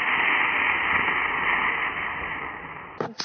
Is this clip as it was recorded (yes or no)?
yes